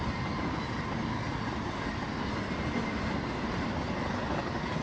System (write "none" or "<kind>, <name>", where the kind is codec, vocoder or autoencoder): none